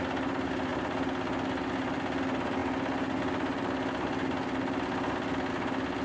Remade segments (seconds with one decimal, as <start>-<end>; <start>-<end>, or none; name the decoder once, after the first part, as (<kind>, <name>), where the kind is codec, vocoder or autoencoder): none